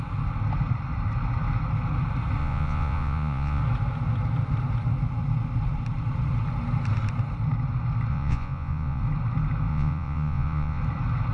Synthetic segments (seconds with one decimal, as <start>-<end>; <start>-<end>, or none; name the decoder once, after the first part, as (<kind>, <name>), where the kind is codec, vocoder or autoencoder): 2.4-3.6 (vocoder, Vocos); 8.1-9.0; 9.7-10.8